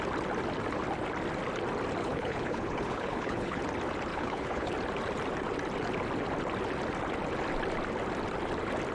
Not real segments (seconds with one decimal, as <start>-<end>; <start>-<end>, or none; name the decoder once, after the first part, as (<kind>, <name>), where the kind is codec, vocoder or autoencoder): 2.0-3.6 (codec, HILCodec); 4.1-4.7